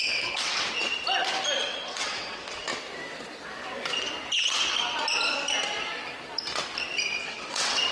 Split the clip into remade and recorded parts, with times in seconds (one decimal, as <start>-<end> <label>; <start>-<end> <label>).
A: 0.0-0.8 remade; 0.8-1.6 recorded; 1.6-2.7 remade; 2.7-7.2 recorded; 7.2-7.9 remade